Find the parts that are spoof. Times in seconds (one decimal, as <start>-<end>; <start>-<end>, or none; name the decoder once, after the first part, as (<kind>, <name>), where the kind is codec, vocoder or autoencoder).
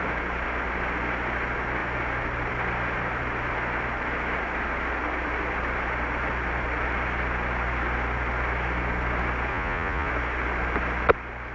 9.5-10.1 (vocoder, Vocos)